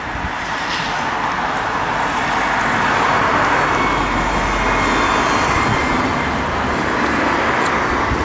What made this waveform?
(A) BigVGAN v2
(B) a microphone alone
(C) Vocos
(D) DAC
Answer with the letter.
B